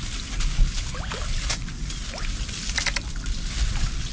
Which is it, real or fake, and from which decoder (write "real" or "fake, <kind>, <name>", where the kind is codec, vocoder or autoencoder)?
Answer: real